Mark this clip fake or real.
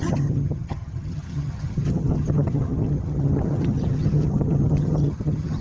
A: fake